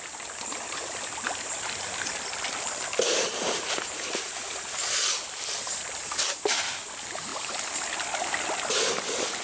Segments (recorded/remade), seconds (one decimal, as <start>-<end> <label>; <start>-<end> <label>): 0.0-7.3 remade; 7.3-8.6 recorded; 8.6-9.4 remade